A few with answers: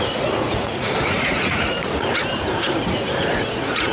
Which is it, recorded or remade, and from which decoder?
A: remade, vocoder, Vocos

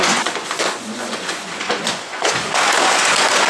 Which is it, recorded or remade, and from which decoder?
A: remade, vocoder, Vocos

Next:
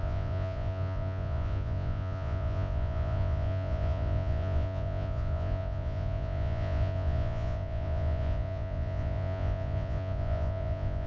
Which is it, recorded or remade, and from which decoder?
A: remade, vocoder, Vocos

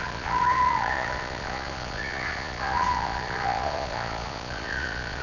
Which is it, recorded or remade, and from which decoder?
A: remade, vocoder, Vocos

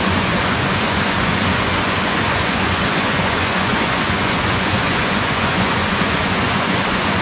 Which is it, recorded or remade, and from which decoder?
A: remade, vocoder, Vocos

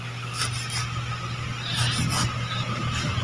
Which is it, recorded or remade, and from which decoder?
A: recorded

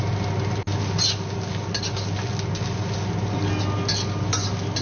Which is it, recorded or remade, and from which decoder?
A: recorded